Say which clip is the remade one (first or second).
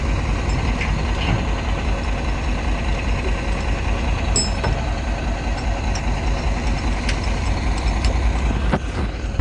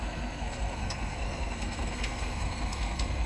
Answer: second